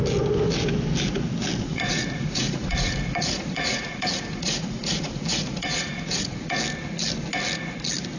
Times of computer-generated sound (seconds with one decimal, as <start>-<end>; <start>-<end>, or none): 1.7-6.6